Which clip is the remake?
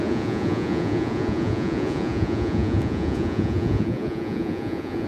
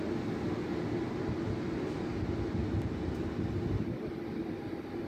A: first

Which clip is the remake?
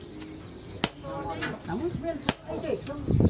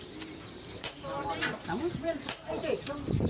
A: second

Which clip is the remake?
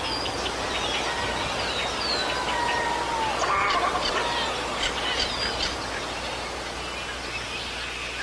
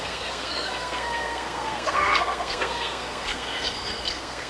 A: second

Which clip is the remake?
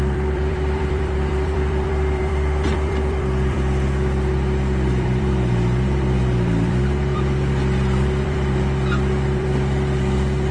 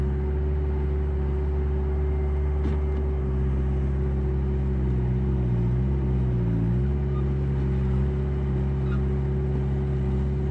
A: first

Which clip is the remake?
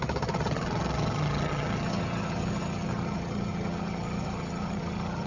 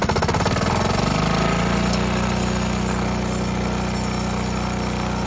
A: first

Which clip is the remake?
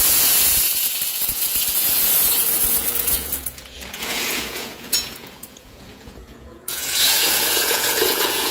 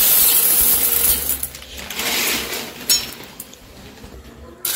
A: first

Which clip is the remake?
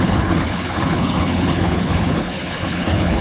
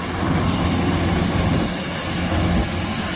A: first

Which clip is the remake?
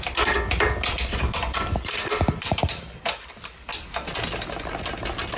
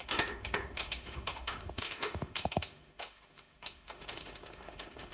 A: second